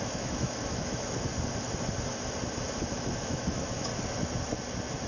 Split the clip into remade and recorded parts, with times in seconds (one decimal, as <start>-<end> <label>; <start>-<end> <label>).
0.0-1.3 remade; 1.3-2.9 recorded; 2.9-3.9 remade; 3.9-5.1 recorded